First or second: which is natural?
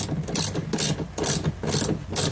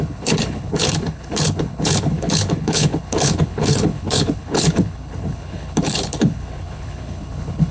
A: first